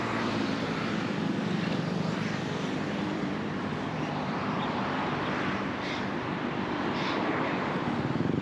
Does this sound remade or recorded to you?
remade